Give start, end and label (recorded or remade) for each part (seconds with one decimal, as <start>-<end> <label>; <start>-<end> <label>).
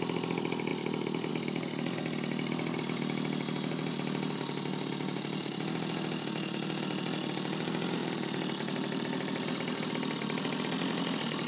0.0-8.0 recorded; 8.0-10.6 remade; 10.6-11.5 recorded